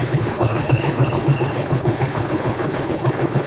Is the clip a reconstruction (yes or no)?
yes